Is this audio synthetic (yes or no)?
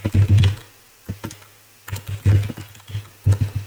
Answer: no